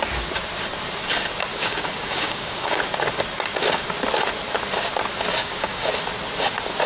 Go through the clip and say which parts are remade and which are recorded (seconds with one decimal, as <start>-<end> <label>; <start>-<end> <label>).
0.0-1.5 recorded; 1.5-2.8 remade; 2.8-5.4 recorded; 5.4-5.9 remade; 5.9-6.9 recorded

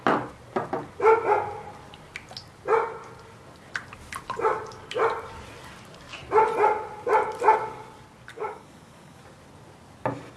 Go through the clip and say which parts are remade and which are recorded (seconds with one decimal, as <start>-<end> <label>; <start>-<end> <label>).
0.0-8.3 recorded; 8.3-9.2 remade; 9.2-10.4 recorded